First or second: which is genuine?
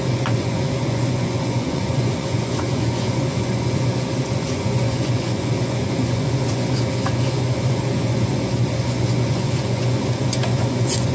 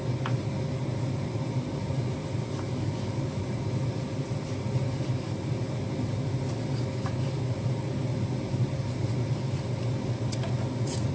second